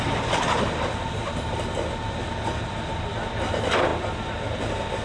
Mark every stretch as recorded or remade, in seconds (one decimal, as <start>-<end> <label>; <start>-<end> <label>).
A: 0.0-5.0 recorded